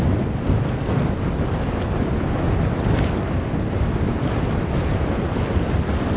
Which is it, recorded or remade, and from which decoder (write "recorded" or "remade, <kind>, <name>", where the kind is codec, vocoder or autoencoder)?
recorded